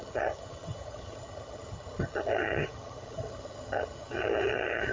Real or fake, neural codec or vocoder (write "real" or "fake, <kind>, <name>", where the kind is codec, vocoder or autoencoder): fake, vocoder, HiFi-GAN